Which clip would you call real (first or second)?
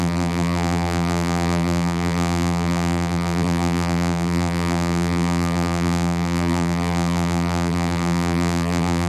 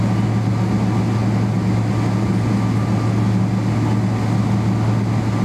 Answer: second